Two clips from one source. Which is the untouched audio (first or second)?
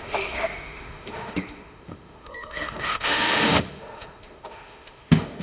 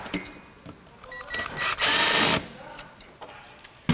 second